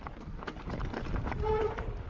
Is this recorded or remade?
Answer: recorded